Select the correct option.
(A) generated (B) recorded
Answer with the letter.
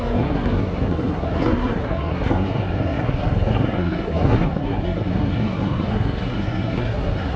A